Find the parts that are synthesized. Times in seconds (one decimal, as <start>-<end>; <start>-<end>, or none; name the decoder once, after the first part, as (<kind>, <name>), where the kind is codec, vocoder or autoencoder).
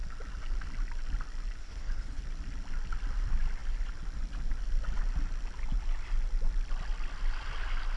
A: 1.6-2.2 (codec, HILCodec)